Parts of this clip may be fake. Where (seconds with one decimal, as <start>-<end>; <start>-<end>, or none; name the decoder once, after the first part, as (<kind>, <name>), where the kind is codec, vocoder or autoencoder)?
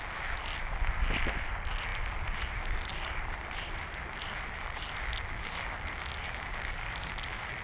1.9-4.5 (vocoder, BigVGAN v2)